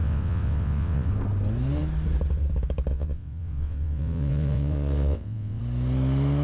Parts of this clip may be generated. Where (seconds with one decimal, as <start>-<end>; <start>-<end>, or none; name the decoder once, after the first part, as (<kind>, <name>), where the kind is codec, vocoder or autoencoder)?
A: 0.0-1.1 (vocoder, WaveNeXt); 2.9-5.6